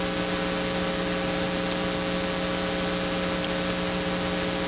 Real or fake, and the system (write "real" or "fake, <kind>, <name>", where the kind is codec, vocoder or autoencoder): real